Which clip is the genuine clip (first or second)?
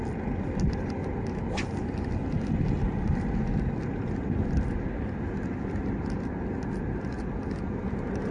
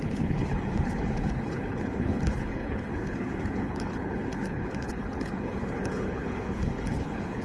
first